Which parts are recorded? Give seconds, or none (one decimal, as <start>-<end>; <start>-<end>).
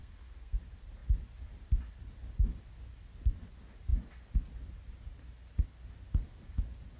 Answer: 0.6-7.0